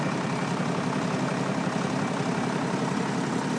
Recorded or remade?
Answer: recorded